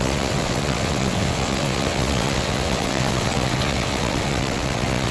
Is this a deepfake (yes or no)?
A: yes